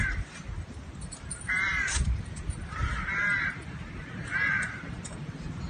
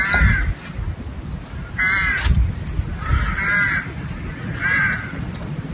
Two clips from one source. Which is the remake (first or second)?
first